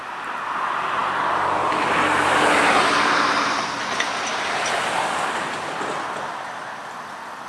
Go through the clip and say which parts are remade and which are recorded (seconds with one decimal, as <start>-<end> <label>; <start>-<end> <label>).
0.0-7.5 recorded